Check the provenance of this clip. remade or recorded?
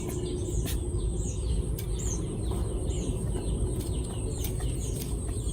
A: recorded